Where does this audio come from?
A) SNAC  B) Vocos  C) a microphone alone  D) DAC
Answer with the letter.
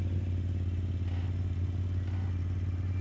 C